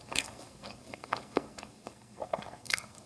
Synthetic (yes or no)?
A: yes